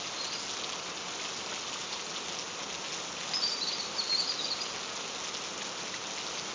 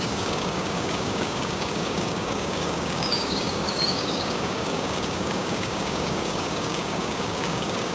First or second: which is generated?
second